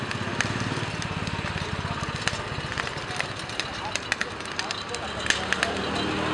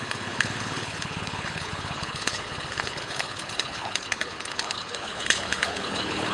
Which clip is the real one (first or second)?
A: first